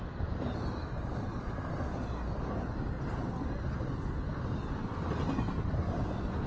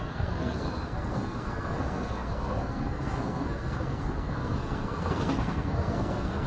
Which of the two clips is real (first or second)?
first